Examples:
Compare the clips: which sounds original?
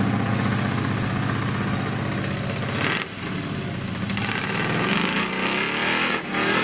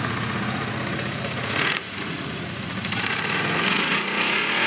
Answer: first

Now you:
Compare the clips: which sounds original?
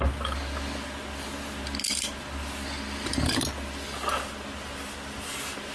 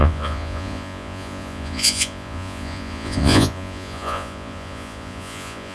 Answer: first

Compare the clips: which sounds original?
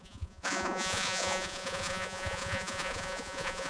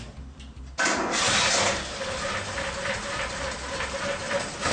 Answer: second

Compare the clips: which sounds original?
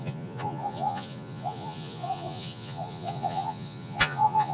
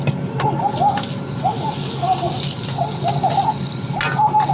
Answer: second